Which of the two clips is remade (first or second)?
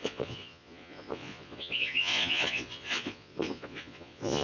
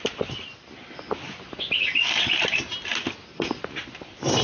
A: first